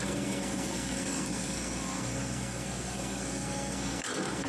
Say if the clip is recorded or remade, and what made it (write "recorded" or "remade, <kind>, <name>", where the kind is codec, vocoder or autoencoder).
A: remade, codec, SNAC